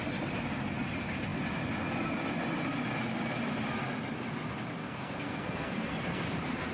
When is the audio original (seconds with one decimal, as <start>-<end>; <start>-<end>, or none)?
0.0-4.8; 6.2-6.7